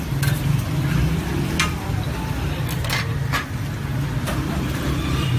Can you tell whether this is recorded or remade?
recorded